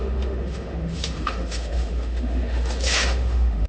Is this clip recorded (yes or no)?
no